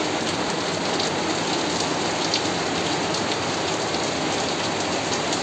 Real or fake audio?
real